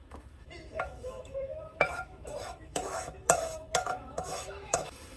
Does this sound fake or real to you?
fake